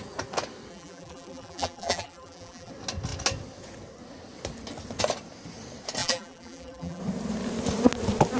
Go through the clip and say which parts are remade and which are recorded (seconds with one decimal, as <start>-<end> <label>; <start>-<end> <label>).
0.0-0.7 recorded; 0.7-2.7 remade; 2.7-6.0 recorded; 6.0-7.0 remade; 7.0-8.4 recorded